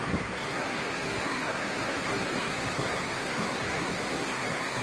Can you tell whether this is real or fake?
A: fake